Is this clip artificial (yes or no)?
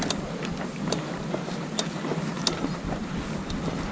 no